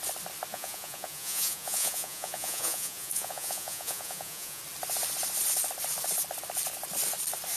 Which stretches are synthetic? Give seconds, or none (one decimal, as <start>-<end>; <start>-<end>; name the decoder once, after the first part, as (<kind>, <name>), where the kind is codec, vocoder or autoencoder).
0.5-4.6 (vocoder, Vocos)